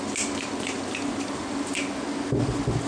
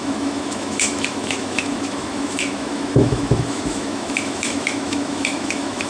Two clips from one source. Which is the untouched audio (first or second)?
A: first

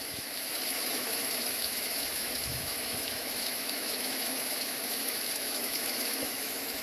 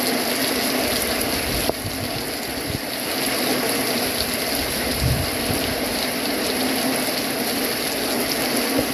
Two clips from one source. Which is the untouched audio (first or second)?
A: second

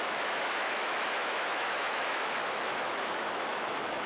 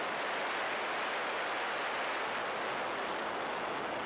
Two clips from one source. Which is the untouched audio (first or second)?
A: second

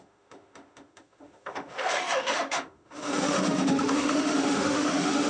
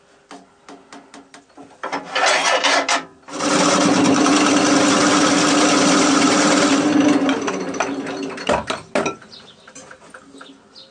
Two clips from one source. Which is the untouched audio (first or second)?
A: second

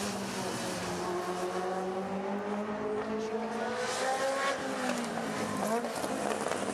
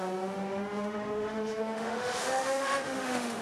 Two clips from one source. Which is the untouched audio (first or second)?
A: first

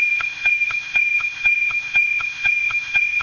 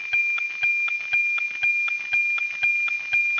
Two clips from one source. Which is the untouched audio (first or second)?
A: second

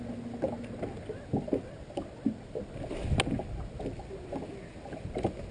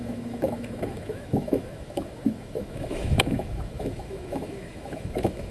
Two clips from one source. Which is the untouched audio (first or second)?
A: first